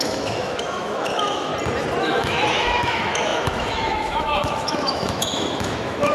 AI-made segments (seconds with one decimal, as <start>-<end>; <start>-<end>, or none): 0.0-1.5; 2.0-6.1

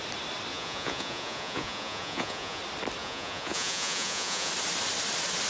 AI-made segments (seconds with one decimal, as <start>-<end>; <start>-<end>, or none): 0.5-2.6; 3.0-4.5